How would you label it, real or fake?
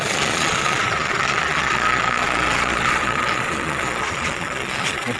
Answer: fake